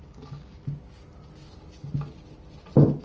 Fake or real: real